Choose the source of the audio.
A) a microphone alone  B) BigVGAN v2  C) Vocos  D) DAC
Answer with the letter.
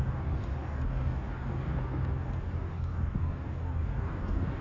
D